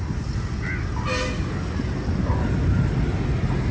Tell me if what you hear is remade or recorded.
recorded